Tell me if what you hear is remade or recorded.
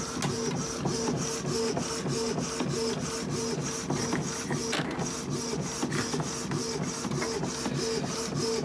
recorded